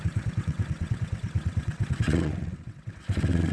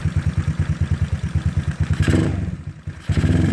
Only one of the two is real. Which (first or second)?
second